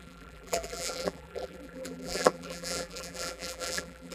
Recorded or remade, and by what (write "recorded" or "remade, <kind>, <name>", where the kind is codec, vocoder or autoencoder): remade, vocoder, BigVGAN v2